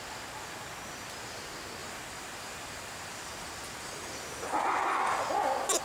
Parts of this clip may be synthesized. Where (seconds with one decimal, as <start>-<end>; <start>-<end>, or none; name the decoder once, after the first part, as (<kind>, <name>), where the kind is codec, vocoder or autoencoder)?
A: 1.8-5.3 (vocoder, BigVGAN v2)

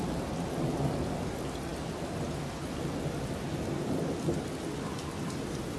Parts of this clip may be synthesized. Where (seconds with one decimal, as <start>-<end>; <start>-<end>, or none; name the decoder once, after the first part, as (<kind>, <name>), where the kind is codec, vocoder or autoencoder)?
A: none

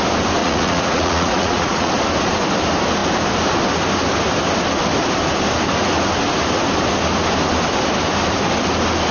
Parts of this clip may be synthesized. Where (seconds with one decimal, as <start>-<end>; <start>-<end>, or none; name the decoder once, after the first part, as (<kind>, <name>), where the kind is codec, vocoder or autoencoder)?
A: 0.4-1.9 (vocoder, Vocos)

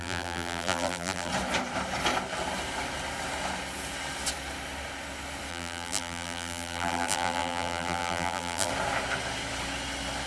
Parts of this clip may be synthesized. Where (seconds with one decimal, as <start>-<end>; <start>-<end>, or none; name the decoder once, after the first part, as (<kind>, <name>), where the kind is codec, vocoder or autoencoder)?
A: 0.0-1.3 (vocoder, BigVGAN v2); 5.5-8.7

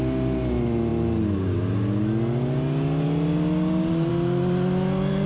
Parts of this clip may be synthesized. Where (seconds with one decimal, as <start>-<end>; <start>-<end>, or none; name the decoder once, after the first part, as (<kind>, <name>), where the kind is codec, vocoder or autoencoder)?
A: none

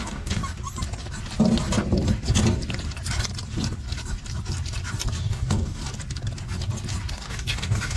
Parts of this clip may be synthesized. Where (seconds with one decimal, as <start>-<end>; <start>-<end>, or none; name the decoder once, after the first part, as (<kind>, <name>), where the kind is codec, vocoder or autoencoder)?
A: 0.0-0.4 (codec, DAC); 5.2-5.8; 7.1-8.0

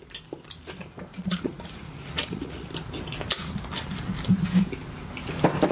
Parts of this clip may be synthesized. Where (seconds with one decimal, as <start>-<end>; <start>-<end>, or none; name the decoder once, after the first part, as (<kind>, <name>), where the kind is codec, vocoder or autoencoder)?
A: 1.1-2.7 (vocoder, Vocos)

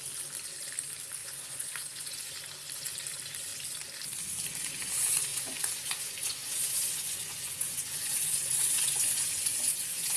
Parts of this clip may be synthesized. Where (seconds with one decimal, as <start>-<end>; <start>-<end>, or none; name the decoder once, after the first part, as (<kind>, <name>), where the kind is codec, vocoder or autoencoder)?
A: 1.2-2.3 (vocoder, Vocos); 5.3-10.2